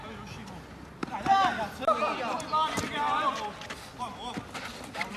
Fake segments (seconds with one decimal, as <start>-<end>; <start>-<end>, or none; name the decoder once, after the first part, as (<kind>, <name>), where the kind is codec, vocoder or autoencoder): 1.0-4.1 (vocoder, BigVGAN v2)